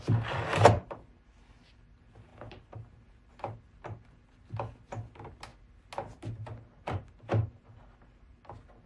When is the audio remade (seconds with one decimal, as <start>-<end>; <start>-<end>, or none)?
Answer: none